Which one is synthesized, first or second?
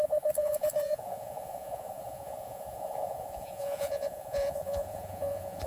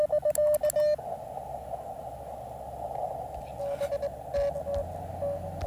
first